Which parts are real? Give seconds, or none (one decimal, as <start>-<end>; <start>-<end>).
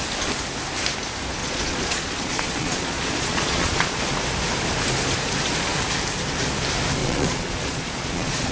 0.0-1.4; 4.0-7.0